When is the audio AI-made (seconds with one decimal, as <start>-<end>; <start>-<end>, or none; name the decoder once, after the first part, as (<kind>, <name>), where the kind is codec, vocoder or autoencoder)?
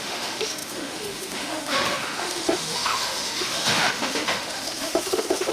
0.0-5.5 (autoencoder, DAC-VAE)